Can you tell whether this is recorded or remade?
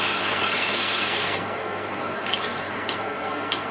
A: remade